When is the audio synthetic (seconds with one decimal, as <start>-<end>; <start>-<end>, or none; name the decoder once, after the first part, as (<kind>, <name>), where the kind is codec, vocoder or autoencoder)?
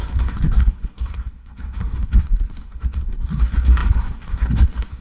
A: 0.0-5.0 (codec, SNAC)